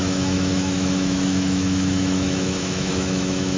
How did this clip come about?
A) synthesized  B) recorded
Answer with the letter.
A